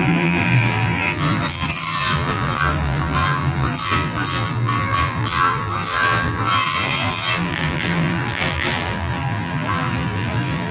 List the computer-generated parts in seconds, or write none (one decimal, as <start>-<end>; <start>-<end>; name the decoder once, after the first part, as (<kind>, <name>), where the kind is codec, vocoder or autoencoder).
0.0-10.7 (vocoder, BigVGAN v2)